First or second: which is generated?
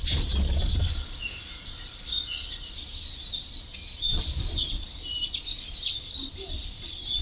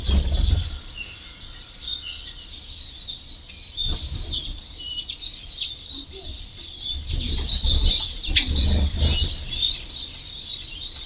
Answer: first